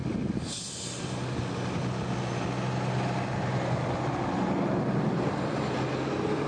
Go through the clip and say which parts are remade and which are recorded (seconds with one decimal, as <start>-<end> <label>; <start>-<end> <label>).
0.0-6.5 recorded